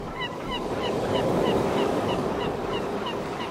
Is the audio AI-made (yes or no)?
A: yes